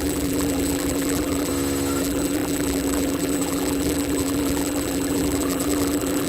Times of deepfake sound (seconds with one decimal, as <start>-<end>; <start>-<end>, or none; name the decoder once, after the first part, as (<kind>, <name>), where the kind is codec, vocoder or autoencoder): 0.0-1.5 (vocoder, BigVGAN v2); 2.0-6.3